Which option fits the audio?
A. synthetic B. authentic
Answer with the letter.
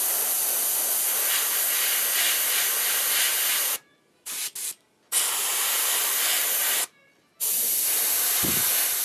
B